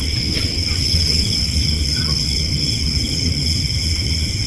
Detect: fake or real fake